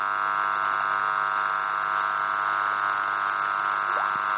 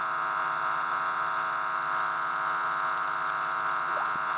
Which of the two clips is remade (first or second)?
second